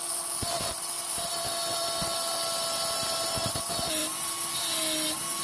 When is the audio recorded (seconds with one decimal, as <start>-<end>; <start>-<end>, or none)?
0.0-5.4